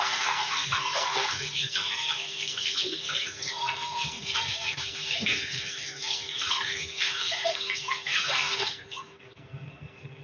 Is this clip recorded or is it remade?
remade